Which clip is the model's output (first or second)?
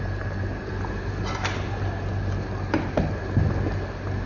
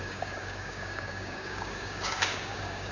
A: second